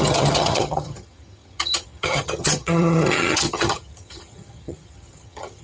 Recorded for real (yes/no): no